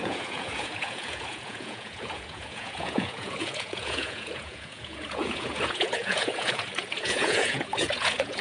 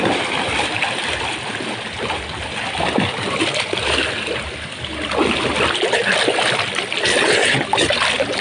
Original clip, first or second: second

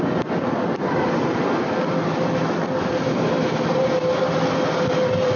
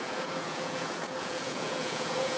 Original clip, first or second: first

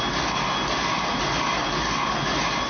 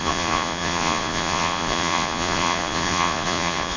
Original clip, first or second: first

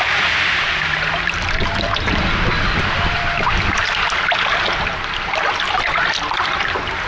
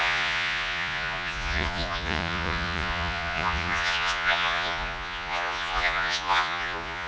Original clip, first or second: first